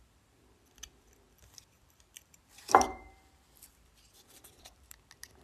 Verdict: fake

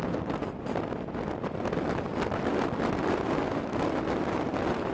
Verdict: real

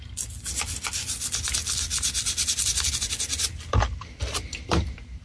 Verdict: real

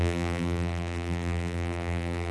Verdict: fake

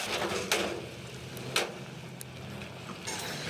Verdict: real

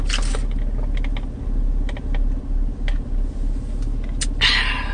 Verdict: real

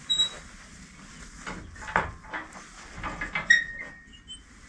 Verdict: real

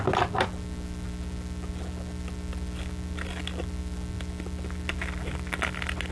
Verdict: real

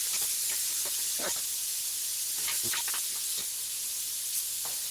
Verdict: real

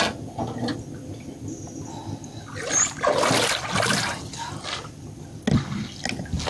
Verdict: real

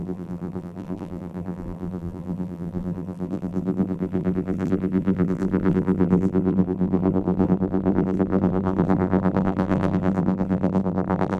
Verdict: fake